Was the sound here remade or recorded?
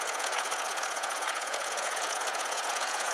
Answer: remade